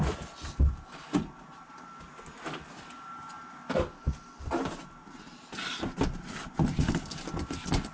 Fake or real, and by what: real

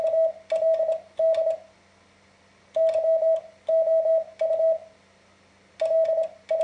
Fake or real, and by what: real